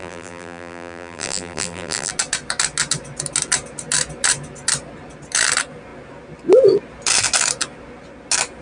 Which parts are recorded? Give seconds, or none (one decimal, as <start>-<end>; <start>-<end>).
2.1-8.6